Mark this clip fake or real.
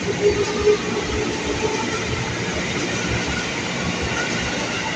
real